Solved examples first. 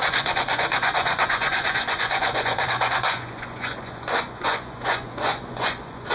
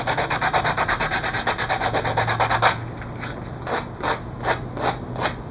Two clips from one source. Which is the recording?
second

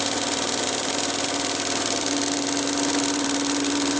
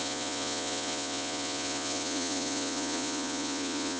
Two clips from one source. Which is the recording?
first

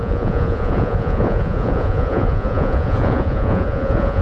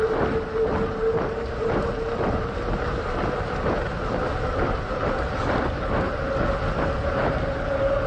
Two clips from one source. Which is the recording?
second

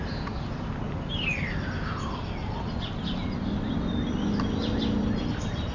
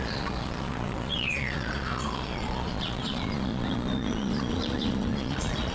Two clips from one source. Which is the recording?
first